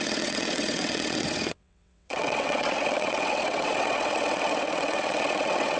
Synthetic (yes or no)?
yes